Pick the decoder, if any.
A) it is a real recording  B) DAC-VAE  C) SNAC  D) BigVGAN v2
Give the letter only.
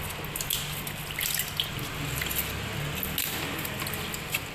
A